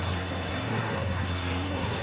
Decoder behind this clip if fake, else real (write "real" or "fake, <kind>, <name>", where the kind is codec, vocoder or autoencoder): fake, codec, SNAC